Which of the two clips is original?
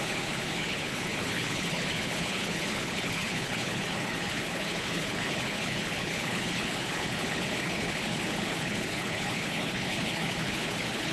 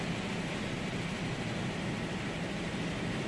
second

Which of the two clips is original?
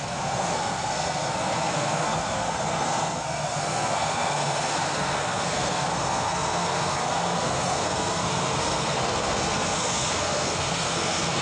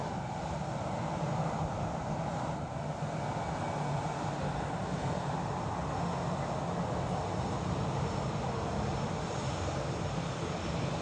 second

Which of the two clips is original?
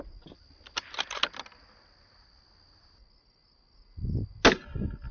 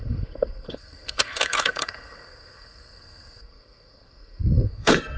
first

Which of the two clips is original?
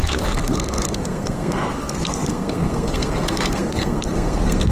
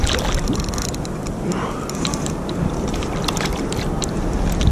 second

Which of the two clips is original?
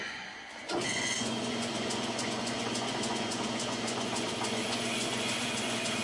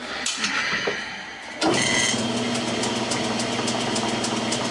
second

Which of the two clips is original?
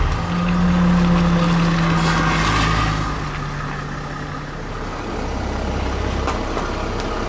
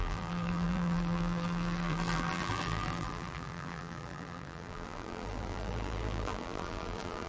first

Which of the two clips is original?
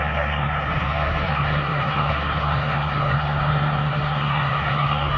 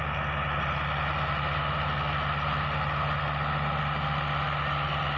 second